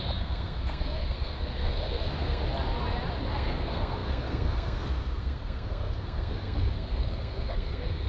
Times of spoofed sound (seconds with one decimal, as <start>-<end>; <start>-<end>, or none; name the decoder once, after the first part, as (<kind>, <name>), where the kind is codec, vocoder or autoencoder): 0.0-2.4 (codec, SNAC); 3.3-8.1